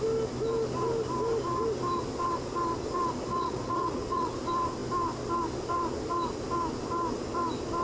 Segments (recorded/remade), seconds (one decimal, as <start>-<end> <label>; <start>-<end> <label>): 0.0-3.3 recorded; 3.3-4.3 remade; 4.3-7.8 recorded